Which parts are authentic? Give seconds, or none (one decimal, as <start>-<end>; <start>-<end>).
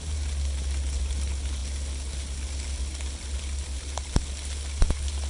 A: 0.0-5.3